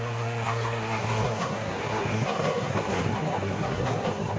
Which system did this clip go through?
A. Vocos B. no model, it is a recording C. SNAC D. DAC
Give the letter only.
C